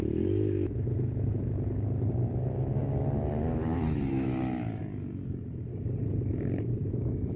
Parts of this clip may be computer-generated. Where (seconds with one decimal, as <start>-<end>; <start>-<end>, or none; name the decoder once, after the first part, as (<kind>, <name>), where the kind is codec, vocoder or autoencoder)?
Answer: 0.0-5.7 (autoencoder, DAC-VAE); 6.6-7.4